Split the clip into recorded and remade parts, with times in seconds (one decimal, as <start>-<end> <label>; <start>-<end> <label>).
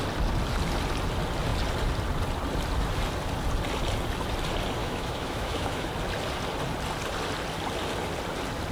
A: 0.0-4.8 recorded; 4.8-5.9 remade; 5.9-8.7 recorded